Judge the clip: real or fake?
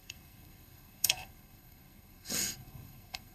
fake